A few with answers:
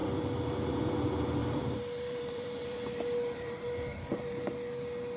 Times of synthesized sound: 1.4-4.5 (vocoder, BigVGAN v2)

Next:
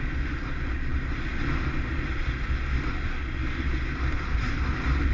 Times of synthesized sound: none